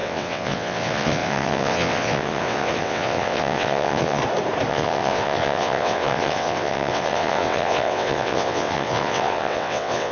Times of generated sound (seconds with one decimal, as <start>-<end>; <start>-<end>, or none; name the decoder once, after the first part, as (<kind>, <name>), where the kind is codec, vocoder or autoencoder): 0.0-4.2 (vocoder, WaveNeXt); 4.7-10.1